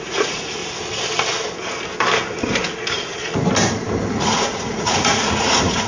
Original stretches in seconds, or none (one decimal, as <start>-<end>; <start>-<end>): 0.6-4.1